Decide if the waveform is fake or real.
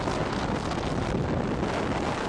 real